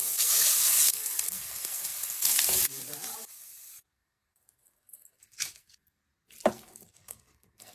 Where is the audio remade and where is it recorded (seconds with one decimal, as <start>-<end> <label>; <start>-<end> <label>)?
0.0-2.6 remade; 2.6-3.3 recorded; 3.3-6.0 remade; 6.0-6.5 recorded; 6.5-7.7 remade